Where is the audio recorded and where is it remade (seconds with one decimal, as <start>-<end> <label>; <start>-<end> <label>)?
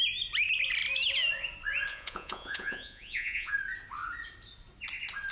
0.0-1.9 recorded; 1.9-3.5 remade; 3.5-5.3 recorded